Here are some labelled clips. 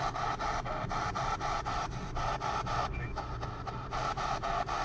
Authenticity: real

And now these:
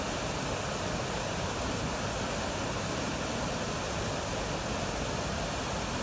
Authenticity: real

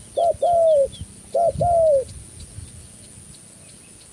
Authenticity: real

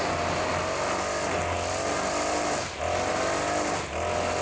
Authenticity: real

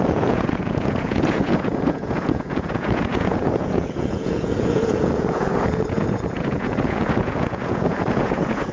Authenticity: fake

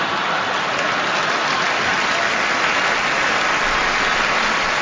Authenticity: real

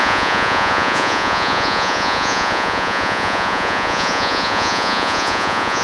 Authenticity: fake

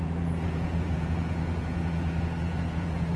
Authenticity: fake